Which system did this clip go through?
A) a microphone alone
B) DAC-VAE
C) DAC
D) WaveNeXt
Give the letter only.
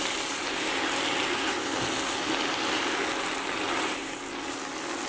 A